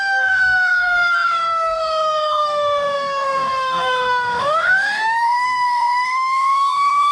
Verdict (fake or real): fake